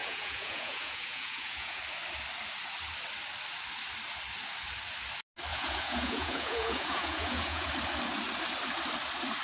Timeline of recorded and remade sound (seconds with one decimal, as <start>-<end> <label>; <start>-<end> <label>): 0.0-1.8 remade; 1.8-5.5 recorded; 5.5-7.7 remade; 7.7-9.4 recorded